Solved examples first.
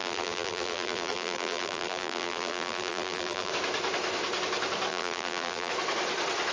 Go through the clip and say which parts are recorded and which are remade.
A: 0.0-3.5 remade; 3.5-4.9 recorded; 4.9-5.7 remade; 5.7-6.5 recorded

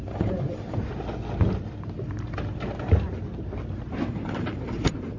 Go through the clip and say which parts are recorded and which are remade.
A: 0.0-0.8 remade; 0.8-3.9 recorded; 3.9-5.2 remade

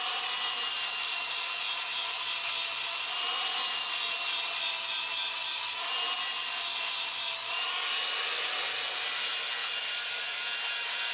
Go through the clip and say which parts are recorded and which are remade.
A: 0.0-6.4 recorded; 6.4-7.6 remade; 7.6-9.6 recorded; 9.6-10.2 remade; 10.2-11.1 recorded

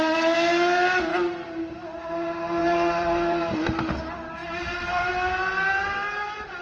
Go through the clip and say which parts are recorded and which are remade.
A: 0.0-1.1 recorded; 1.1-2.1 remade; 2.1-2.6 recorded; 2.6-4.0 remade; 4.0-4.4 recorded; 4.4-5.1 remade; 5.1-6.6 recorded

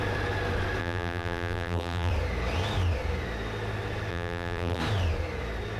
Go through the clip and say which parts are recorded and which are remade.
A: 0.0-0.8 recorded; 0.8-2.1 remade; 2.1-4.1 recorded; 4.1-4.8 remade; 4.8-5.8 recorded

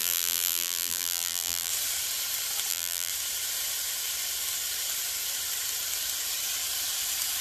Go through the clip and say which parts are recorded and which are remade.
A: 0.0-1.7 remade; 1.7-2.7 recorded; 2.7-3.1 remade; 3.1-7.4 recorded

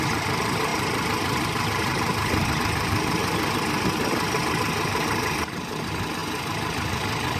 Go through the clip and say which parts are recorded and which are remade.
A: 0.0-3.2 remade; 3.2-4.6 recorded; 4.6-7.4 remade

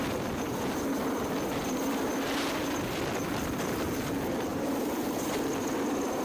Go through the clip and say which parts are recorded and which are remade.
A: 0.0-4.5 recorded; 4.5-5.3 remade; 5.3-6.2 recorded